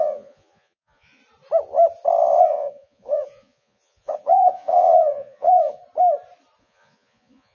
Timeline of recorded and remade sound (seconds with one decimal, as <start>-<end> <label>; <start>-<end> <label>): 0.0-1.2 remade; 1.2-2.4 recorded; 2.4-5.8 remade; 5.8-6.6 recorded; 6.6-7.5 remade